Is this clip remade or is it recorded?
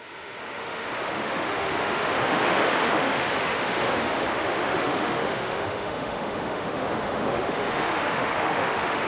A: remade